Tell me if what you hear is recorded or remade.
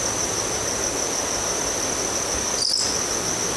recorded